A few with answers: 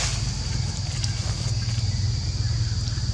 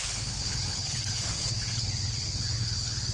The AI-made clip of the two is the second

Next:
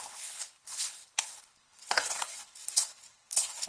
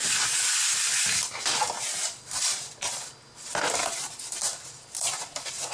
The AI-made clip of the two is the first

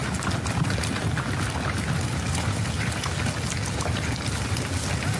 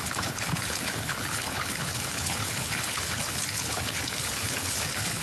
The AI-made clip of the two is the second